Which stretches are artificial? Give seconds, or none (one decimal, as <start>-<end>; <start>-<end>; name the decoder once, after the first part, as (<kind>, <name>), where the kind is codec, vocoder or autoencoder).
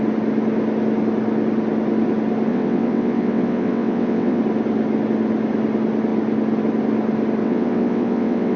2.5-4.4 (vocoder, WaveNeXt); 7.4-8.6